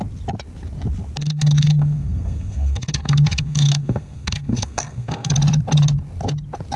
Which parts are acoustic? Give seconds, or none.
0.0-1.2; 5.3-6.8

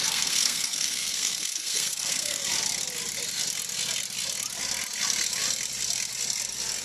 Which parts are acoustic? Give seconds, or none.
2.4-6.8

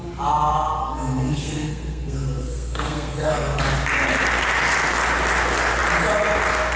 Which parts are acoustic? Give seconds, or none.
0.0-0.8; 3.6-6.8